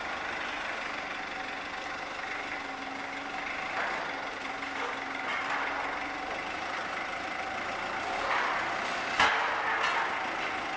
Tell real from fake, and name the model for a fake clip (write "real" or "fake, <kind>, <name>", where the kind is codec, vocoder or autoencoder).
real